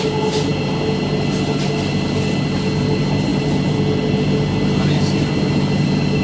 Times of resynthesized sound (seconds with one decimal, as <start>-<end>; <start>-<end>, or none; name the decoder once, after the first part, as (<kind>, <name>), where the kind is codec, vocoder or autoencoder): none